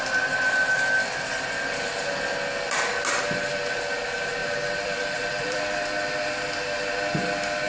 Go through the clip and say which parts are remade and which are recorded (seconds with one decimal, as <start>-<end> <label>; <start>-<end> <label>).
0.0-4.4 recorded; 4.4-5.6 remade; 5.6-7.7 recorded